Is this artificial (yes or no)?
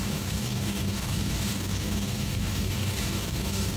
yes